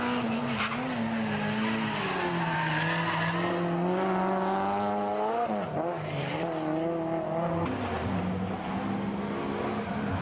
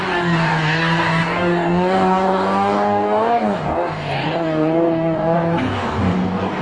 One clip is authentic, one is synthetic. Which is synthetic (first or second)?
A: second